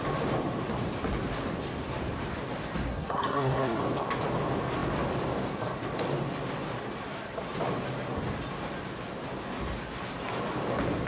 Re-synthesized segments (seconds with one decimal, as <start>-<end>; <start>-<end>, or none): 2.9-3.8

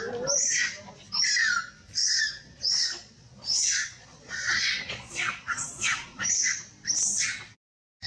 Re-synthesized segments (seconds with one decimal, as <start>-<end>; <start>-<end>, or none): 2.0-6.3